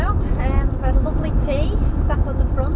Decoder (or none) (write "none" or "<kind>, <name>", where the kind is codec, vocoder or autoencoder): none